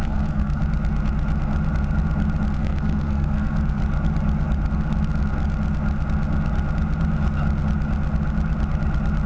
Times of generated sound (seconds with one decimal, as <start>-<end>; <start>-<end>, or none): 0.0-0.6; 2.6-3.8